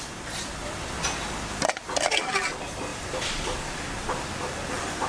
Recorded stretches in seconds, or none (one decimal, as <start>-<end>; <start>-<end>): 0.0-2.9